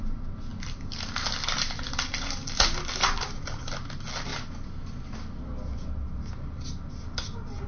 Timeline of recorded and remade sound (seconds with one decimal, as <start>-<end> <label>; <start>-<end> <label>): 0.0-7.7 recorded